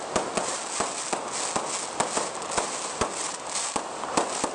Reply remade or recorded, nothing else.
recorded